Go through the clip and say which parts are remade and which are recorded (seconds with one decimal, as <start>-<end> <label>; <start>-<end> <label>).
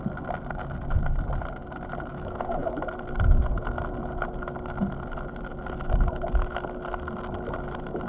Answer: 0.0-2.1 recorded; 2.1-2.7 remade; 2.7-8.1 recorded